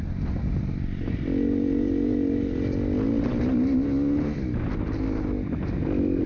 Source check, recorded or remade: recorded